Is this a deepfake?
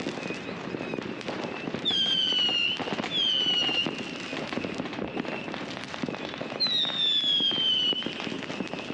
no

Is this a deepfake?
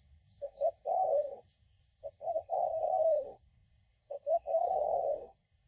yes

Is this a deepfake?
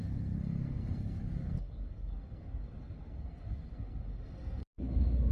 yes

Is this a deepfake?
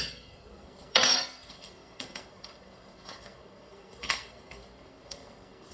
yes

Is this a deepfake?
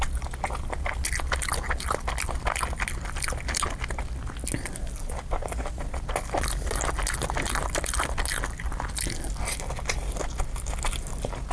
no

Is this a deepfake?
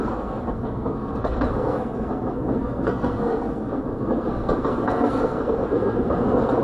yes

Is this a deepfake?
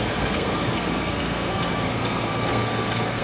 yes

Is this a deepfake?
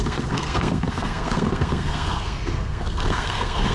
yes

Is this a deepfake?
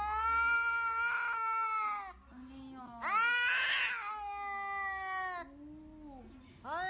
no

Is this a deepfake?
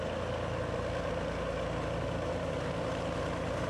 no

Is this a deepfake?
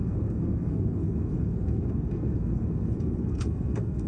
yes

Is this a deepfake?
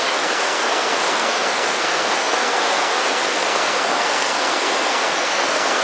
yes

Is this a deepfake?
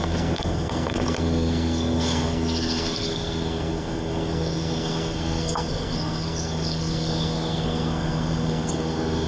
yes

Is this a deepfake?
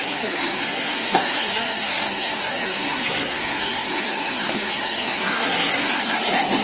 yes